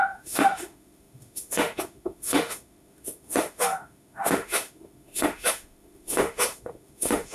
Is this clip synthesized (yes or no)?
yes